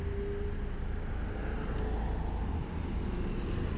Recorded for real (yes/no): yes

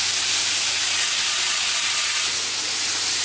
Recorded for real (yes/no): yes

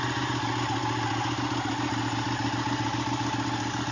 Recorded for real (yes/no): yes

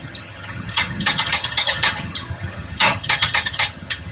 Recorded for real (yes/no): no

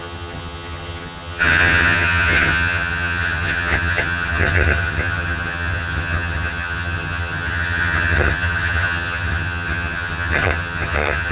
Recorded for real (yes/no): no